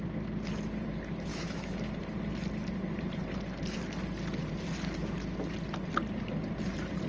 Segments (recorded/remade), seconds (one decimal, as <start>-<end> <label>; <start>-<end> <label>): 0.0-1.3 recorded; 1.3-1.9 remade; 1.9-7.1 recorded